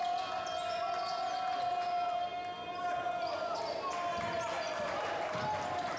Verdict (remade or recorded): recorded